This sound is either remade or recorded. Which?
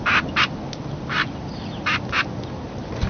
recorded